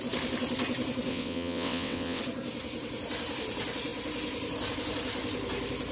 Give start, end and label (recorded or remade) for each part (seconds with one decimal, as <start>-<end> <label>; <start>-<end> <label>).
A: 0.0-1.1 recorded; 1.1-2.2 remade; 2.2-5.9 recorded